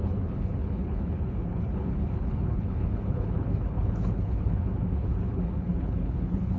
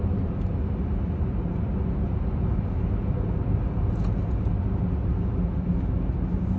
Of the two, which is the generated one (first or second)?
first